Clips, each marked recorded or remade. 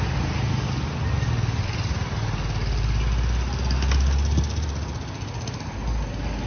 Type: recorded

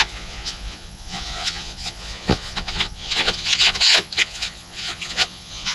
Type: remade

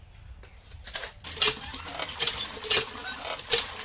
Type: recorded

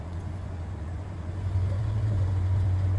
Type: remade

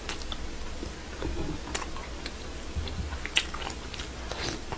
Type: recorded